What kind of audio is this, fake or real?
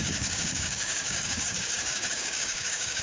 fake